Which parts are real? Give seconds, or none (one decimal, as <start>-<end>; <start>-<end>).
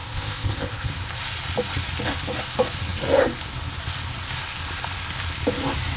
0.9-6.0